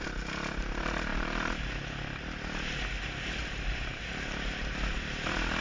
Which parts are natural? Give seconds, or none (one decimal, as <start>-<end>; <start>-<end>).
0.0-1.1; 1.7-3.4; 4.6-5.6